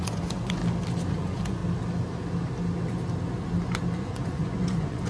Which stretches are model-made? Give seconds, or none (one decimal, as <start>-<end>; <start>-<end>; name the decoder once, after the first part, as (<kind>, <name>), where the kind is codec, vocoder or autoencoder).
0.0-0.6 (vocoder, Vocos); 1.1-1.6; 4.0-5.1